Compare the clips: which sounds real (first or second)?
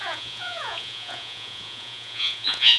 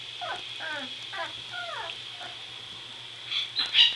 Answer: second